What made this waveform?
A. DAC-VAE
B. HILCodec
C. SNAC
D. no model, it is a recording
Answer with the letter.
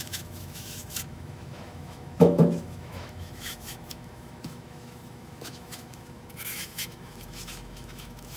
A